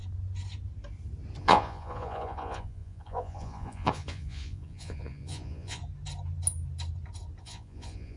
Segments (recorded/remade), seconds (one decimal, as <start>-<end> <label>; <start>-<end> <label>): 0.0-1.4 recorded; 1.4-5.8 remade; 5.8-7.4 recorded; 7.4-8.2 remade